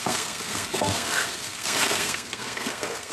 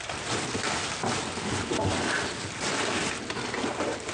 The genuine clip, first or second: second